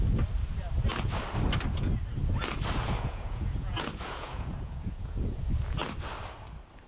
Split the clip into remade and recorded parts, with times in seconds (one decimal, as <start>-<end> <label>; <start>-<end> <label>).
0.0-2.8 recorded; 2.8-5.4 remade; 5.4-6.9 recorded